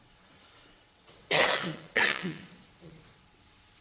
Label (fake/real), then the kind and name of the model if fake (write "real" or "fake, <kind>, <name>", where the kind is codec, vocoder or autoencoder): fake, vocoder, WaveNeXt